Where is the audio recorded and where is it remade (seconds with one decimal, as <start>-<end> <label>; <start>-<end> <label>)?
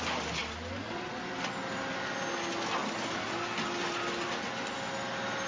0.0-5.5 recorded